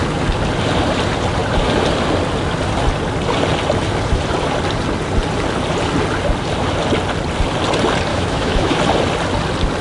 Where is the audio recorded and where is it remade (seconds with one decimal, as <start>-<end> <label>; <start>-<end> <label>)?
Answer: 0.0-8.1 recorded; 8.1-8.8 remade; 8.8-9.8 recorded